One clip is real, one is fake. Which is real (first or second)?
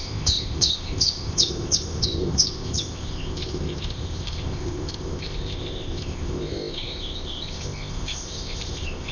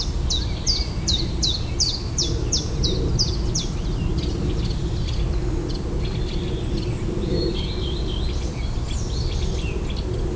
second